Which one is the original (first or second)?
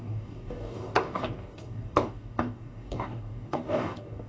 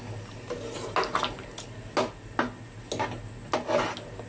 second